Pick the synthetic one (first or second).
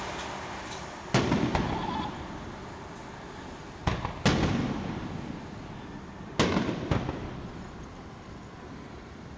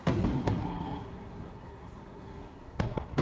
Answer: second